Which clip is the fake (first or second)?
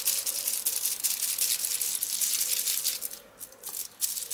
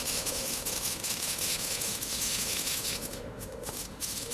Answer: second